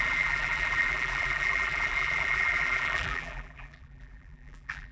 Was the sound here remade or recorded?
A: remade